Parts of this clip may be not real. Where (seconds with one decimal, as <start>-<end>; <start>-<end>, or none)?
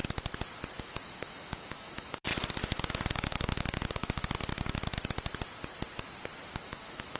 0.8-2.3; 3.1-4.2; 6.6-7.2